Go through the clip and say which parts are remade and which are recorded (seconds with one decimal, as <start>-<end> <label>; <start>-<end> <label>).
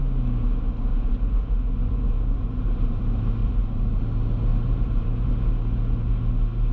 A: 0.0-0.9 recorded; 0.9-3.0 remade; 3.0-3.4 recorded; 3.4-4.0 remade; 4.0-4.5 recorded; 4.5-5.3 remade; 5.3-6.7 recorded